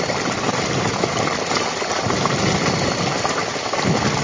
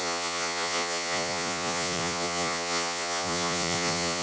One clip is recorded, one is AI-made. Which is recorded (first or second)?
first